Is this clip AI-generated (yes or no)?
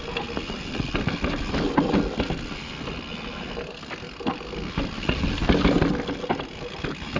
no